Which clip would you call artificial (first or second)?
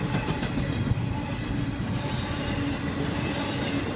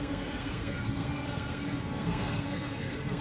second